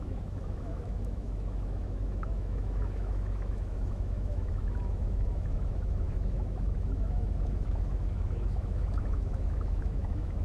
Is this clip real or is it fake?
fake